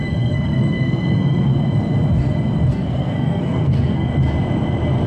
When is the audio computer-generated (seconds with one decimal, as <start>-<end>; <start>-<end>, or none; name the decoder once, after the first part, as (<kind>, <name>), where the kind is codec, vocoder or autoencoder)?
0.0-1.5 (codec, SNAC); 2.7-4.1